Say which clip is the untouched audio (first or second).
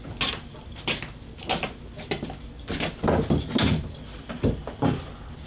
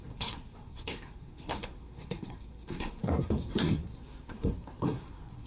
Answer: first